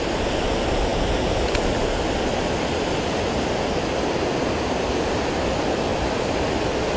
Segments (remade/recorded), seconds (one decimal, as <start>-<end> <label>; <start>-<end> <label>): 0.0-5.9 recorded; 5.9-6.5 remade; 6.5-7.0 recorded